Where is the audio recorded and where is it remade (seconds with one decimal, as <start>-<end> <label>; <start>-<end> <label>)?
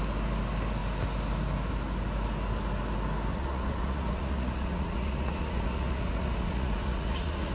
0.0-3.3 recorded; 3.3-7.5 remade